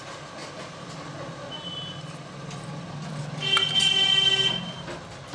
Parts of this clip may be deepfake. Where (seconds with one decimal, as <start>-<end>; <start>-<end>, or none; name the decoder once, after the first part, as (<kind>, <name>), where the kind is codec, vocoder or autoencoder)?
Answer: 0.4-0.9 (vocoder, BigVGAN v2)